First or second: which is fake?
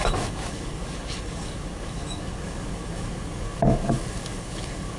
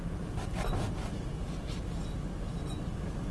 first